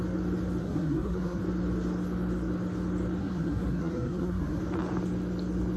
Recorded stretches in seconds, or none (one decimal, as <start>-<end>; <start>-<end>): 0.0-0.6; 1.4-3.2; 4.6-5.8